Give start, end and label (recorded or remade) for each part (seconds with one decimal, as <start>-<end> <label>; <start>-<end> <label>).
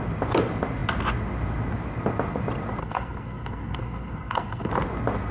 0.0-2.8 recorded; 2.8-4.7 remade; 4.7-5.3 recorded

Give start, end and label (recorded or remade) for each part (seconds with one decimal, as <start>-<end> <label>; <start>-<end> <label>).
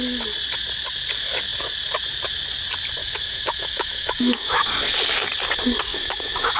0.0-3.0 recorded; 3.0-4.7 remade; 4.7-5.9 recorded; 5.9-6.6 remade